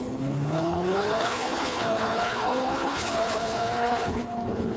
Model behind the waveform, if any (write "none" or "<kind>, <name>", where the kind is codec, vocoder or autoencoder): codec, HILCodec